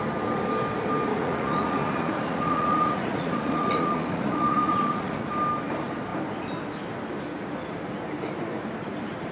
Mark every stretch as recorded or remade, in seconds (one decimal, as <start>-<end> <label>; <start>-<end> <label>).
0.0-1.1 recorded; 1.1-5.3 remade; 5.3-9.3 recorded